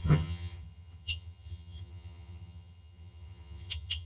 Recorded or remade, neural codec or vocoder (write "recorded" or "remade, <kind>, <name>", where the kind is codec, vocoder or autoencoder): remade, vocoder, HiFi-GAN